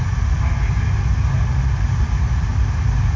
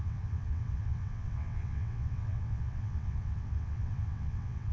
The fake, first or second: second